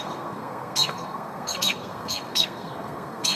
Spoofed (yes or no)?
yes